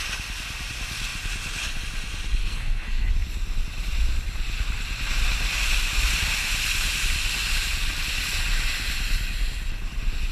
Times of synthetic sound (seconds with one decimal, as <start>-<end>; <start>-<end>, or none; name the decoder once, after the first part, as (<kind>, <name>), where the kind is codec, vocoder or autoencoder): 2.4-3.1 (codec, SNAC)